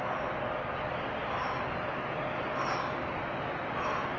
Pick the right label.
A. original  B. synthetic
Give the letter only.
A